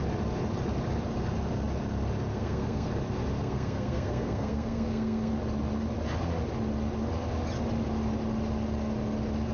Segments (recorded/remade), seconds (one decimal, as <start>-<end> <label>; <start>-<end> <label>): 0.0-2.3 recorded; 2.3-2.9 remade; 2.9-3.4 recorded; 3.4-5.3 remade; 5.3-9.5 recorded